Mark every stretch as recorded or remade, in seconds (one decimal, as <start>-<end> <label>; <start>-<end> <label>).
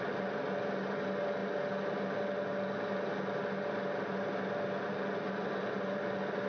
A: 0.0-6.5 recorded